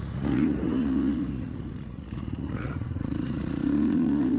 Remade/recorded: remade